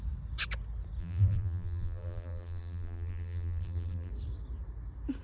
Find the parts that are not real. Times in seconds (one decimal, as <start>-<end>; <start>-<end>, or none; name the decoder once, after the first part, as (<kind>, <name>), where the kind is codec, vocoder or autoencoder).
1.0-4.1 (vocoder, BigVGAN v2)